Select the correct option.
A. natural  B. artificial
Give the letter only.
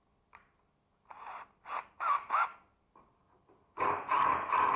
A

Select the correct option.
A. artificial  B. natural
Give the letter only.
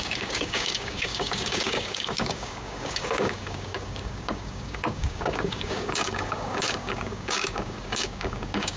A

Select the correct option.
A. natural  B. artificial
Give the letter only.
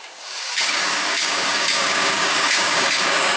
B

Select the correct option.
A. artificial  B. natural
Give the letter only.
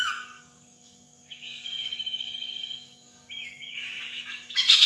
A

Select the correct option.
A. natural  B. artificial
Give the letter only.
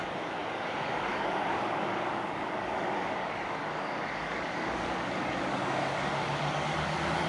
B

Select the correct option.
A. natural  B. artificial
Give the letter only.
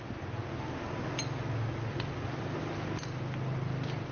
A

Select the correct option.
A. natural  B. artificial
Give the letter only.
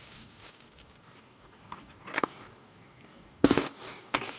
B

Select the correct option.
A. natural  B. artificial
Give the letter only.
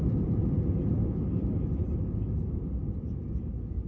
A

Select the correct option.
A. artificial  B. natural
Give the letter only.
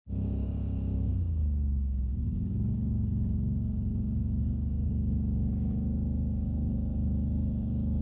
A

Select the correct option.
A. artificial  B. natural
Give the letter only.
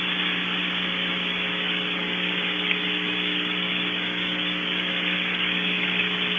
A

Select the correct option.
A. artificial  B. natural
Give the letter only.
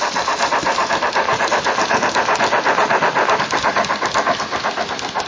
B